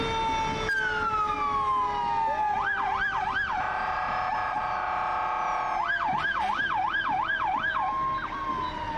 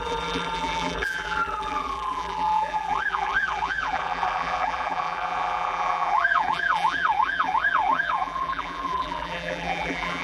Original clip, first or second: first